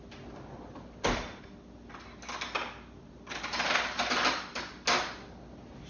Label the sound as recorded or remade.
recorded